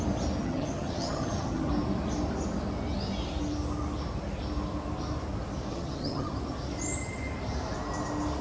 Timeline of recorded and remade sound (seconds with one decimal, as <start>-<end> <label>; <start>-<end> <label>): 0.0-0.4 recorded; 0.4-1.7 remade; 1.7-5.7 recorded; 5.7-6.3 remade; 6.3-8.4 recorded

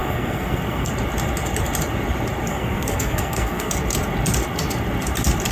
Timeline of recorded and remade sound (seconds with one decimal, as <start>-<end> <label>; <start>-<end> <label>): 0.0-0.9 remade; 0.9-2.5 recorded; 2.5-3.7 remade; 3.7-5.5 recorded

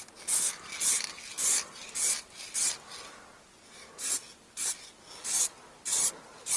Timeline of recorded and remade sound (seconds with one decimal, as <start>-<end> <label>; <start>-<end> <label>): 0.0-6.6 recorded

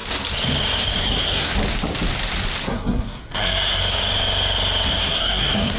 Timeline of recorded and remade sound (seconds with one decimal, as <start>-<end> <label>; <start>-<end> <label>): 0.0-1.0 recorded; 1.0-1.5 remade; 1.5-2.6 recorded; 2.6-3.8 remade; 3.8-5.0 recorded; 5.0-5.8 remade

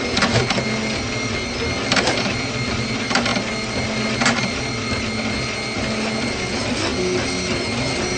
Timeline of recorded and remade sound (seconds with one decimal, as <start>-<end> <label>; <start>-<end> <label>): 0.0-8.2 recorded

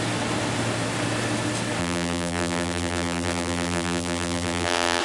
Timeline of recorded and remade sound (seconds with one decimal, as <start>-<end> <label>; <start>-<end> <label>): 0.0-1.8 recorded; 1.8-5.0 remade

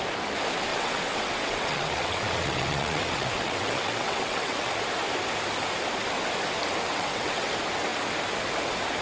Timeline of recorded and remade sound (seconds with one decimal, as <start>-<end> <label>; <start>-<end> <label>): 0.0-0.7 recorded; 0.7-4.7 remade; 4.7-6.9 recorded; 6.9-7.5 remade; 7.5-9.0 recorded